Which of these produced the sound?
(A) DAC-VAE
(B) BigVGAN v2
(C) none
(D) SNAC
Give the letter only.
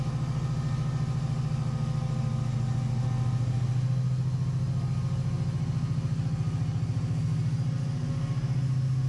C